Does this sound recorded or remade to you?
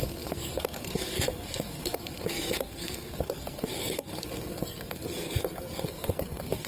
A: remade